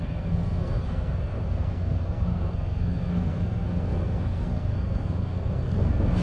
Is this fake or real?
fake